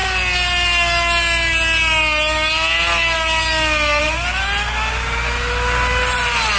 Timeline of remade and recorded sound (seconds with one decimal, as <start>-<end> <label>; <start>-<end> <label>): 0.0-6.6 recorded